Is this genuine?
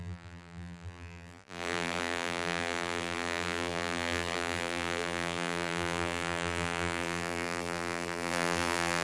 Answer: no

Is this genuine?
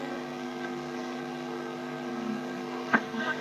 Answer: no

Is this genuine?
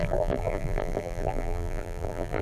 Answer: no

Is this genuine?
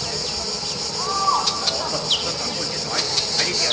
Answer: yes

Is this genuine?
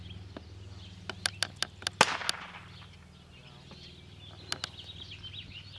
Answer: yes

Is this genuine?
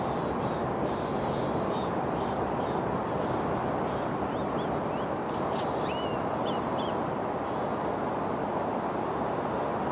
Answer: yes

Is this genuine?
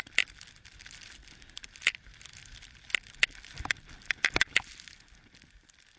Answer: yes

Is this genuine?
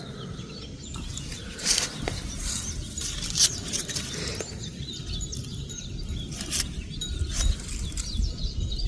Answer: no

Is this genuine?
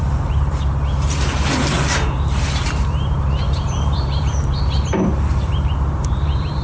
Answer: no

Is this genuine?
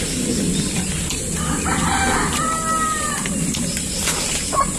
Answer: yes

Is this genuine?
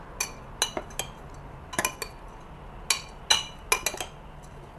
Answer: yes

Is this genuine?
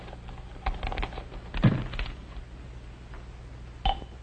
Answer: yes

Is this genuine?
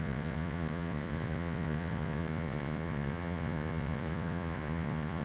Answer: no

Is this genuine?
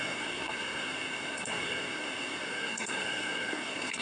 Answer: no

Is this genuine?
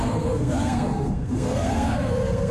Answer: no